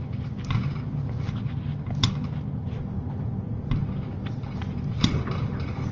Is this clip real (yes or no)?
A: yes